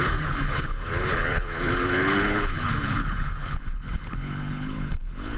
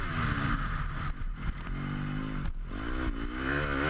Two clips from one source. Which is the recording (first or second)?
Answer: second